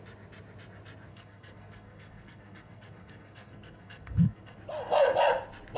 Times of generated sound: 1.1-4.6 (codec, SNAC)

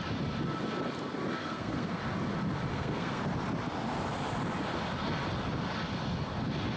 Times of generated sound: 1.4-2.0 (codec, SNAC); 2.7-3.2

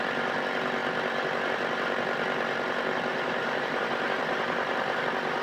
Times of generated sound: 3.1-5.0 (vocoder, BigVGAN v2)

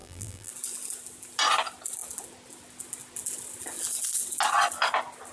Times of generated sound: 0.0-0.5 (vocoder, BigVGAN v2)

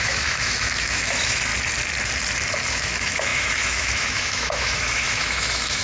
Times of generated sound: 0.0-1.5 (autoencoder, DAC-VAE); 2.7-5.8

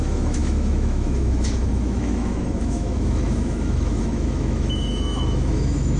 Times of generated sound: 0.0-6.0 (autoencoder, DAC-VAE)

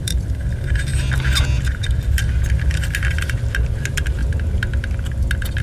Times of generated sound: 0.0-0.9 (vocoder, BigVGAN v2); 3.8-4.2

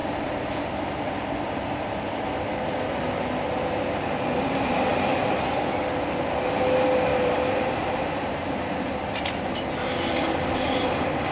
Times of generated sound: 0.0-2.8 (vocoder, BigVGAN v2); 7.1-10.0